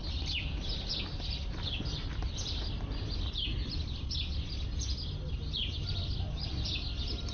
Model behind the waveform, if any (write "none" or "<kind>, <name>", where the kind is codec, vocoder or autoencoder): none